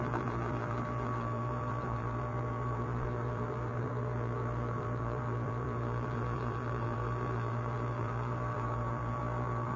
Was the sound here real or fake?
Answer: fake